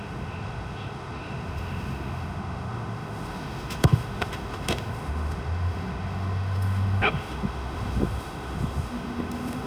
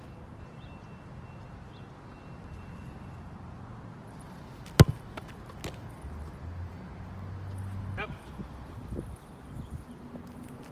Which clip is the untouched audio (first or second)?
second